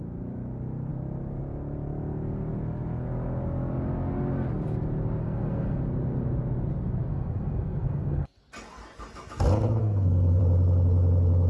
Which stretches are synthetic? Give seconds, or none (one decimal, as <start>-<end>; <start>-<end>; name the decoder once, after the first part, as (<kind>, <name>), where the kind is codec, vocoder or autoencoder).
5.2-5.8 (codec, SNAC); 7.1-8.5; 9.8-10.4